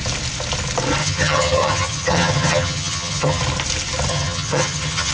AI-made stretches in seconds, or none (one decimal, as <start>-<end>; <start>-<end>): 1.0-3.4; 4.1-5.1